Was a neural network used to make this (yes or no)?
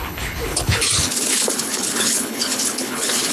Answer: yes